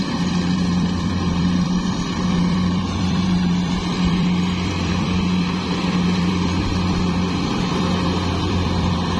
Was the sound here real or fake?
fake